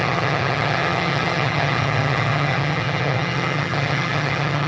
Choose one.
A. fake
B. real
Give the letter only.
A